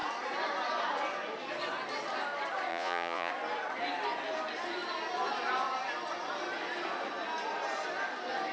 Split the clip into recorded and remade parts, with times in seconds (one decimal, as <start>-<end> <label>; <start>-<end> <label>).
0.0-2.7 recorded; 2.7-3.3 remade; 3.3-8.5 recorded